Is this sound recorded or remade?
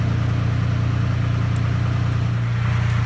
recorded